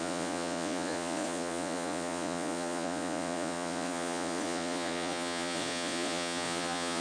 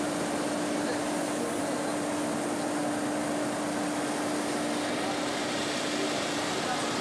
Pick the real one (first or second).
second